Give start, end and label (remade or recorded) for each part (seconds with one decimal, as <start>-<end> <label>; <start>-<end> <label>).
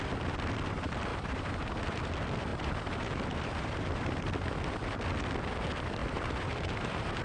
0.0-1.1 recorded; 1.1-2.0 remade; 2.0-2.5 recorded; 2.5-4.1 remade; 4.1-6.0 recorded; 6.0-7.2 remade